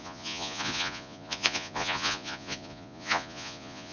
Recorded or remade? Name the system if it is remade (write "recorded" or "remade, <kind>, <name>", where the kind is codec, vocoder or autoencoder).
remade, vocoder, Vocos